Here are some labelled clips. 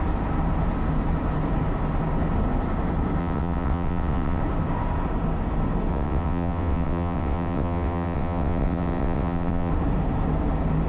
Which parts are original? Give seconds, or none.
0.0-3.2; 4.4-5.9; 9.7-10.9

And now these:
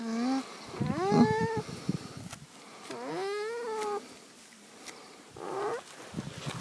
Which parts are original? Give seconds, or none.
0.0-6.6

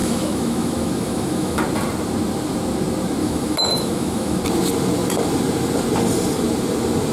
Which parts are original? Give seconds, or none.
1.6-3.2; 4.4-7.1

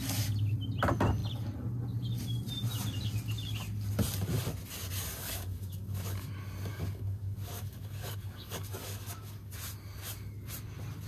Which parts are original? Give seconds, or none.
0.0-5.2; 6.3-6.7; 9.5-11.1

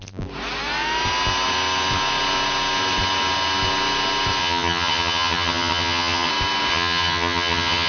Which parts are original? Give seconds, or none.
0.0-4.4; 6.3-6.7